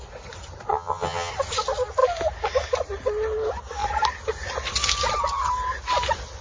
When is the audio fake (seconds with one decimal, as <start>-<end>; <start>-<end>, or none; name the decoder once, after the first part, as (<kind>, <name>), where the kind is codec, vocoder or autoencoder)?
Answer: 0.7-1.3 (vocoder, HiFi-GAN)

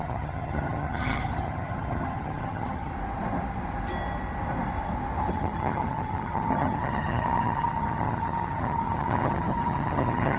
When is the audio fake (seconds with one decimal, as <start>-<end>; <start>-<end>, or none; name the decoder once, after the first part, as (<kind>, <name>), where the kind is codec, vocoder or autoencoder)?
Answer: 0.0-2.9 (vocoder, HiFi-GAN); 5.3-10.4

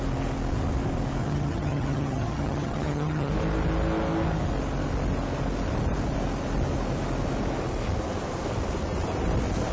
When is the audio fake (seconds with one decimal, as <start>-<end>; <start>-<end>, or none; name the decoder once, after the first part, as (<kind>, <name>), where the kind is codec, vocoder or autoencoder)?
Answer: 1.2-3.3 (vocoder, HiFi-GAN)

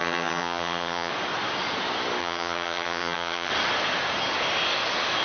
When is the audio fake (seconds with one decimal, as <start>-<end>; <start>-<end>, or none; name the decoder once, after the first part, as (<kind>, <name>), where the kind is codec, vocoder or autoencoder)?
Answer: 0.0-1.1 (vocoder, HiFi-GAN); 2.2-3.5

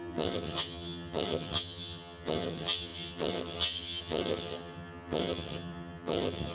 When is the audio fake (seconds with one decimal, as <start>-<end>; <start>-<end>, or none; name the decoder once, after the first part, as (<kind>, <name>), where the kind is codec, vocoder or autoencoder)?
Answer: 0.0-6.5 (vocoder, HiFi-GAN)

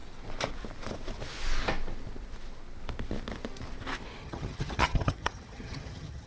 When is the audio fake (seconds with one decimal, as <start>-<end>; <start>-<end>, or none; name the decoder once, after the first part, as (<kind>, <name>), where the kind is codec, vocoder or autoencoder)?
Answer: 4.2-6.3 (vocoder, HiFi-GAN)